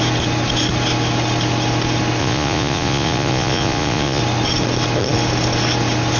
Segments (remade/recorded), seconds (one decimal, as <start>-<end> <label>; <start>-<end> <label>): 0.0-2.2 recorded; 2.2-4.2 remade; 4.2-6.2 recorded